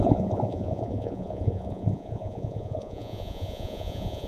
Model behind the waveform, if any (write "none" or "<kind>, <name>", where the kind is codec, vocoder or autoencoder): vocoder, Vocos